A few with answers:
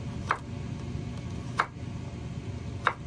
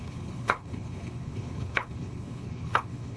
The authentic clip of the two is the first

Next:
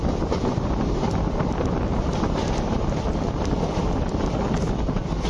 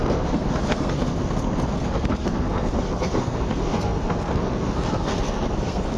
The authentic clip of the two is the first